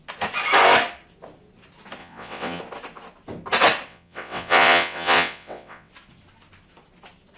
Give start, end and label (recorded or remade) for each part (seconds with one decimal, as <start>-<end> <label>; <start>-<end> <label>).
0.0-2.0 recorded; 2.0-2.6 remade; 2.6-3.9 recorded; 3.9-5.9 remade; 5.9-7.4 recorded